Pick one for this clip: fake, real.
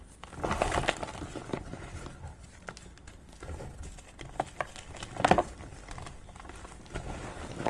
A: real